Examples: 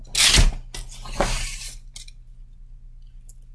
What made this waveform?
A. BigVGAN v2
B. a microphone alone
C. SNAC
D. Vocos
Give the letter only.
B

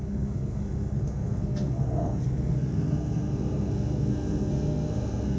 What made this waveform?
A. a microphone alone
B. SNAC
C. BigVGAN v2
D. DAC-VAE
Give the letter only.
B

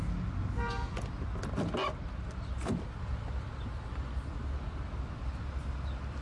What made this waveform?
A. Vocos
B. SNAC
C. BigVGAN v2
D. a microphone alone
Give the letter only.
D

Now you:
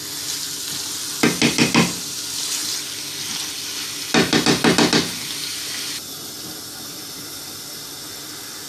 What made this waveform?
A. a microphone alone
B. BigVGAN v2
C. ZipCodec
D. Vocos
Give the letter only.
A